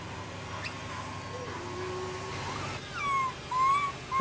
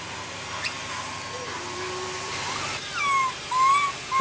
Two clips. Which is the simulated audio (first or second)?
second